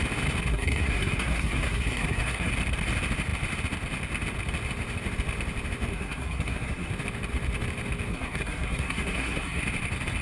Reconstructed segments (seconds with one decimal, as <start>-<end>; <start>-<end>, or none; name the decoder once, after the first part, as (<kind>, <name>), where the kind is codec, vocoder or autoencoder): 0.5-2.5 (codec, SNAC); 5.9-6.9; 8.1-9.6